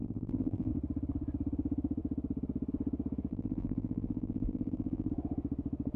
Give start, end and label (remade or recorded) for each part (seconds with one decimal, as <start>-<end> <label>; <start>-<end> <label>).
0.0-0.7 remade; 0.7-3.3 recorded; 3.3-5.1 remade; 5.1-6.0 recorded